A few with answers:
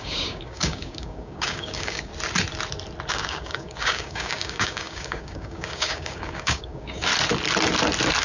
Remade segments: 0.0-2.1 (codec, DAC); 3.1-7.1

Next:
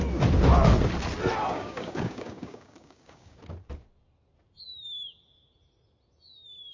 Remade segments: 1.5-3.4 (codec, DAC)

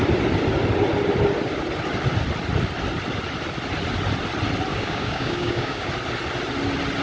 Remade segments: 4.7-5.9 (codec, DAC)

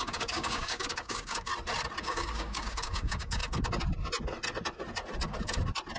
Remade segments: 0.0-1.5 (codec, DAC); 2.0-3.4

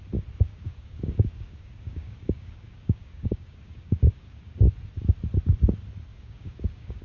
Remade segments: 0.5-4.5 (codec, DAC); 6.1-7.0